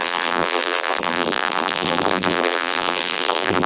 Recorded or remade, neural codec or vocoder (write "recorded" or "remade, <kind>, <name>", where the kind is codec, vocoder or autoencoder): remade, vocoder, BigVGAN v2